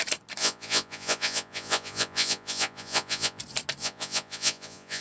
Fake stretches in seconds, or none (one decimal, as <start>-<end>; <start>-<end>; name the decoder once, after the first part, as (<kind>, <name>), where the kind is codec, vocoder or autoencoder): 0.4-3.4 (vocoder, Vocos); 3.8-5.0